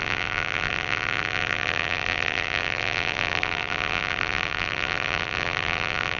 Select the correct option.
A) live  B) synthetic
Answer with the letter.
B